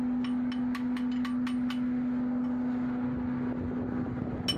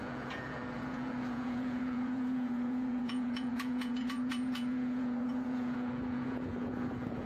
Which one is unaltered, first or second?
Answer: first